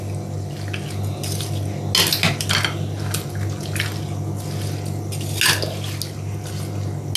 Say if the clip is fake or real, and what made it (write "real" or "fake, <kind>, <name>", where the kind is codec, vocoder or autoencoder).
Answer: real